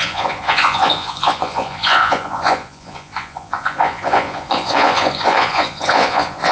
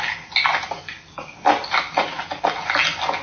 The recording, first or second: second